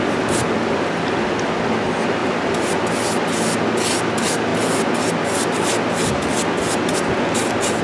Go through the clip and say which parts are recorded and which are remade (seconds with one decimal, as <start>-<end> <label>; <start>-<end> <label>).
0.0-2.2 recorded; 2.2-2.7 remade; 2.7-7.8 recorded